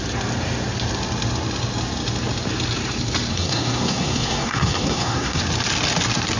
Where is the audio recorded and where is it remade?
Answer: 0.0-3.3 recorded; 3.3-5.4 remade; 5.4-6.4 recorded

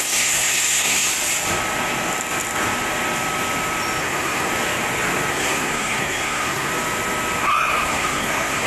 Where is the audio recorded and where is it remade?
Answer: 0.0-1.1 remade; 1.1-4.0 recorded; 4.0-4.5 remade; 4.5-5.3 recorded; 5.3-6.7 remade; 6.7-7.4 recorded; 7.4-8.7 remade

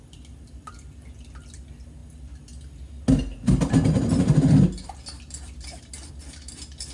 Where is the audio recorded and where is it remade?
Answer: 0.0-6.9 recorded

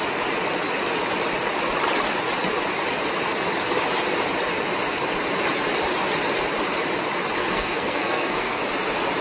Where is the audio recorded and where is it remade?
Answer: 0.0-7.4 recorded; 7.4-8.6 remade; 8.6-9.2 recorded